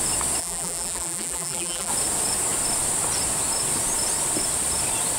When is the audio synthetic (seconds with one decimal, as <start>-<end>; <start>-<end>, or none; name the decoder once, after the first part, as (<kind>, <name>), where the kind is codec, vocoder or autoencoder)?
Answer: 0.4-1.9 (vocoder, BigVGAN v2)